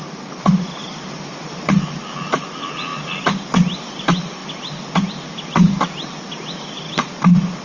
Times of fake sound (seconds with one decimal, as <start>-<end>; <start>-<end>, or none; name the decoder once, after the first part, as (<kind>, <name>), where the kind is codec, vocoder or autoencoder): 0.8-1.7 (vocoder, BigVGAN v2)